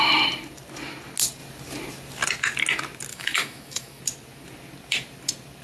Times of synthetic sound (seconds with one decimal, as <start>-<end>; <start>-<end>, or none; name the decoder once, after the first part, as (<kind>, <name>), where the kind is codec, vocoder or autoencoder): 3.1-4.0 (autoencoder, DAC-VAE)